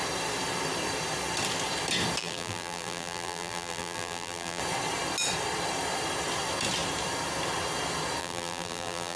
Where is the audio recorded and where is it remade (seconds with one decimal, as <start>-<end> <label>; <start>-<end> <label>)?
0.0-2.2 recorded; 2.2-4.6 remade; 4.6-8.2 recorded; 8.2-9.2 remade